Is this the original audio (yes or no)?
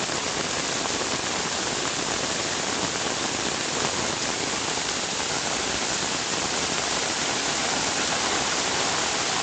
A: yes